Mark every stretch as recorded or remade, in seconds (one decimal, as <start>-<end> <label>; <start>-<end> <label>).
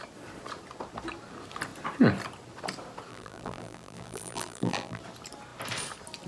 0.0-3.1 recorded; 3.1-5.0 remade; 5.0-6.3 recorded